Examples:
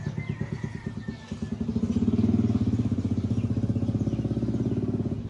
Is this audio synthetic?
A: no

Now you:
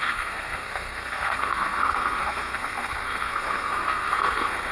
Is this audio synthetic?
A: yes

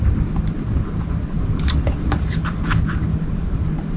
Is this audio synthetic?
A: no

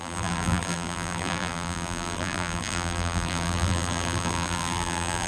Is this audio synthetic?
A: yes